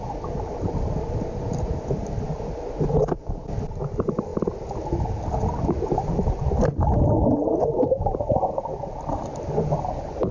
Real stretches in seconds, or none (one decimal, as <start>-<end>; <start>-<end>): 0.0-10.3